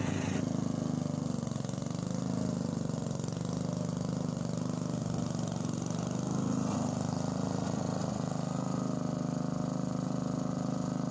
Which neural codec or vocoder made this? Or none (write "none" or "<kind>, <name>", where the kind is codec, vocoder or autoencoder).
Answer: none